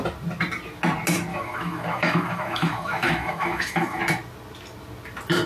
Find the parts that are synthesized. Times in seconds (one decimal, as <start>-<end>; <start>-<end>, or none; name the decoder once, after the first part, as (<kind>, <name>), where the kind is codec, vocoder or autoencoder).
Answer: 1.3-4.0 (autoencoder, DAC-VAE)